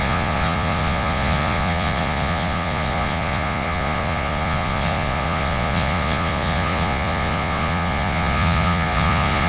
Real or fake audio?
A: fake